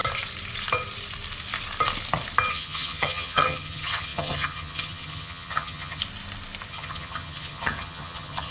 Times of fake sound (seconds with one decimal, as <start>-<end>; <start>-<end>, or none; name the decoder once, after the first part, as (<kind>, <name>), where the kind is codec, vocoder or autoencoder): 2.5-6.0 (vocoder, HiFi-GAN); 6.7-8.5